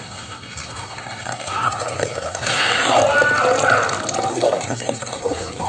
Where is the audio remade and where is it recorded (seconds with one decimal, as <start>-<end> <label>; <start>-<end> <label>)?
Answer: 0.0-3.0 remade; 3.0-4.3 recorded; 4.3-5.7 remade